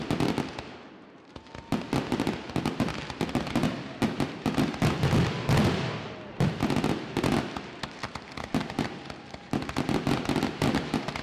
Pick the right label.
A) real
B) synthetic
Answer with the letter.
A